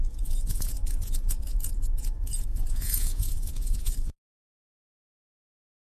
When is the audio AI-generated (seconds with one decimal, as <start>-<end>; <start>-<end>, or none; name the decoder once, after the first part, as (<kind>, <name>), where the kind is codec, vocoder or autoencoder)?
0.0-5.9 (vocoder, Vocos)